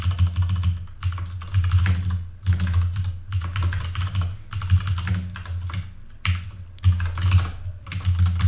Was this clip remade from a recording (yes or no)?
no